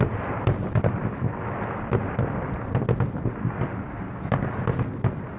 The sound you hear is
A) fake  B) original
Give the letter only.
B